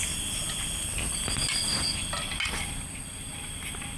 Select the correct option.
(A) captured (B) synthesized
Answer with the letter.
A